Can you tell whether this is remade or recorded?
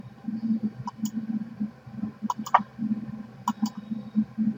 recorded